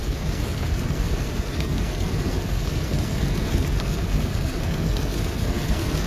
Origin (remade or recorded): remade